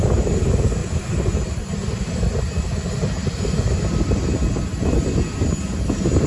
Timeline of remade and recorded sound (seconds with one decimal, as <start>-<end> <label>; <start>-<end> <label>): 0.0-6.3 recorded